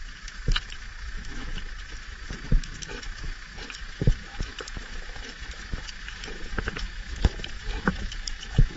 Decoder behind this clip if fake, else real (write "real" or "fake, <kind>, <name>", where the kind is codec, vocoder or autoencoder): fake, autoencoder, DAC-VAE